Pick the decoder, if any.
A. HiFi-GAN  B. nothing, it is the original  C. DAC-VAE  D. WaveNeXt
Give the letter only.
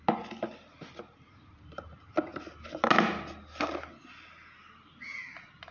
B